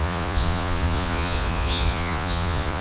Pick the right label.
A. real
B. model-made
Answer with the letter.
B